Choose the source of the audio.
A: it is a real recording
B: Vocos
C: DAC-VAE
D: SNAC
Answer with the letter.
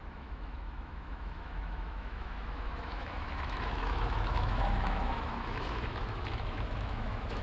C